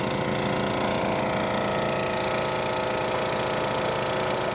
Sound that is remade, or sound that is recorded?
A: recorded